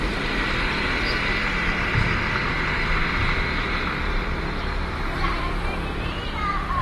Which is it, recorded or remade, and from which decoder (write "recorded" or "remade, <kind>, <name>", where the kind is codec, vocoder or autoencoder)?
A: remade, vocoder, BigVGAN v2